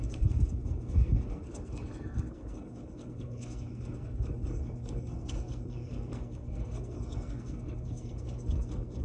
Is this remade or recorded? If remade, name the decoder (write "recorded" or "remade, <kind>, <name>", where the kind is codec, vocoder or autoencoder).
remade, codec, SNAC